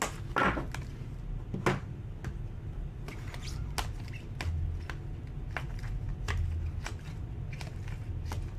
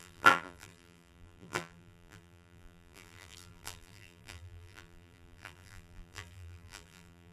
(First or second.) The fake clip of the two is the second